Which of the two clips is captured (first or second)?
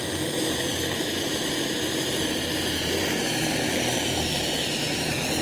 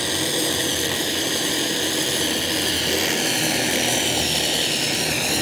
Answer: second